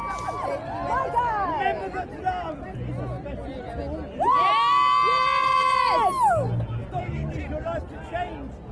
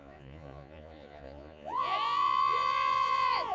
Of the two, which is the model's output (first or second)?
second